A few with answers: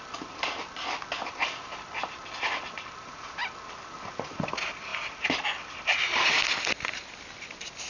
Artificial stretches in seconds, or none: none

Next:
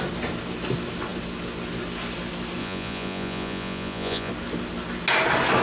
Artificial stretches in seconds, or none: 2.6-4.3 (vocoder, Vocos)

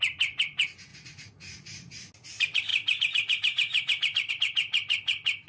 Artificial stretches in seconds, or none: 0.9-2.1 (vocoder, Vocos)

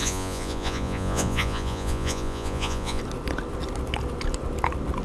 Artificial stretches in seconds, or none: 0.0-3.0 (vocoder, Vocos)